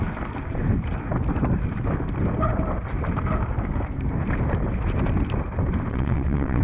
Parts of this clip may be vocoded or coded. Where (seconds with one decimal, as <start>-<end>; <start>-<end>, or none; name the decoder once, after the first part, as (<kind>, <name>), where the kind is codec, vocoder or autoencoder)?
5.9-6.6 (vocoder, WaveNeXt)